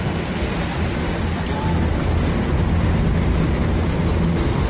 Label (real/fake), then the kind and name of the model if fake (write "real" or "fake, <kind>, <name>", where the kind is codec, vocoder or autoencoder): real